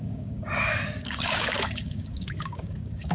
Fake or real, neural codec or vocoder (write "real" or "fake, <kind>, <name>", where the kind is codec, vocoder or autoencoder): fake, codec, DAC